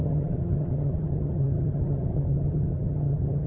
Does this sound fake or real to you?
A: fake